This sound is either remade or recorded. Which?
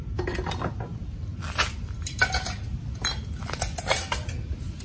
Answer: recorded